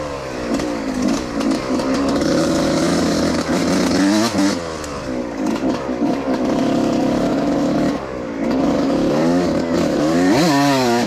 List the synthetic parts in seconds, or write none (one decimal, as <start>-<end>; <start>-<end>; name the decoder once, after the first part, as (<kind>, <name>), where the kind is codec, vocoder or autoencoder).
0.0-3.6 (codec, DAC); 5.0-11.1